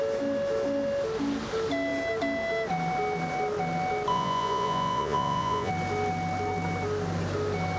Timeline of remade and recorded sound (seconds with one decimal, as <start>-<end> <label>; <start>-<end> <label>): 0.0-4.1 recorded; 4.1-5.7 remade; 5.7-7.8 recorded